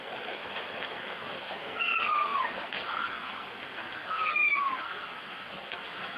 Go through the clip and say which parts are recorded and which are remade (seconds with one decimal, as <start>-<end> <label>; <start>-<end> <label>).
0.0-6.2 remade